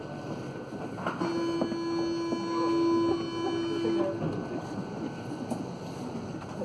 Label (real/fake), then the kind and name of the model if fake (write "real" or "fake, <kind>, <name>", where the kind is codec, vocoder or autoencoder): real